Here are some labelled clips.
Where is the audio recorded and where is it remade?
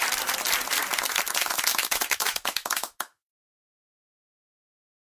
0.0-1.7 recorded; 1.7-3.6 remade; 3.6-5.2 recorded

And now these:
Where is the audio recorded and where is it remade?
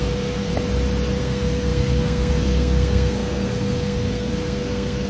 0.0-0.5 remade; 0.5-1.2 recorded; 1.2-5.1 remade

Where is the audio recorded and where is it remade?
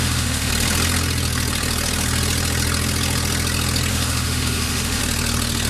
0.0-0.5 remade; 0.5-3.9 recorded; 3.9-5.0 remade; 5.0-5.7 recorded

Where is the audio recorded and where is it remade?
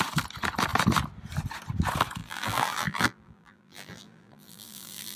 0.0-2.2 recorded; 2.2-5.2 remade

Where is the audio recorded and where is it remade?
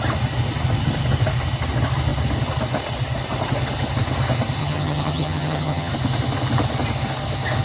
0.0-4.6 recorded; 4.6-5.9 remade; 5.9-7.6 recorded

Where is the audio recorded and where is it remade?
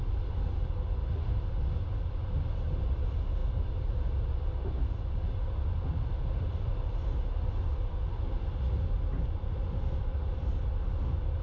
0.0-3.4 recorded; 3.4-3.9 remade; 3.9-11.4 recorded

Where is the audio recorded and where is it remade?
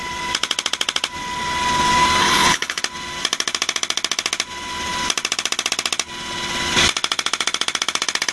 0.0-2.2 recorded; 2.2-2.8 remade; 2.8-8.3 recorded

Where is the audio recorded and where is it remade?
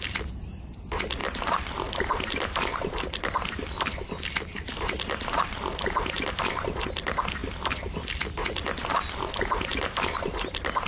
0.0-1.2 recorded; 1.2-6.3 remade; 6.3-10.9 recorded